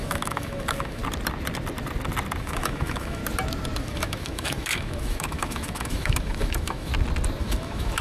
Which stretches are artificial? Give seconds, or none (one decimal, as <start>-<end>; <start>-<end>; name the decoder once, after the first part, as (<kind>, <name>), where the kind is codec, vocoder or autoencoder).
0.0-1.0 (autoencoder, DAC-VAE); 2.4-3.2; 3.8-6.9; 7.4-8.0